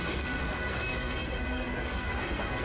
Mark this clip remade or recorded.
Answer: remade